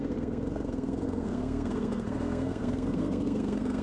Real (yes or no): no